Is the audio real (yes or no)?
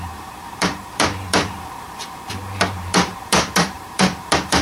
no